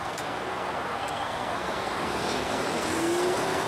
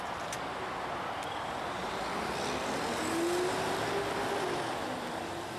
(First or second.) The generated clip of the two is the first